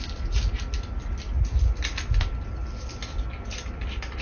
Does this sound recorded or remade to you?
recorded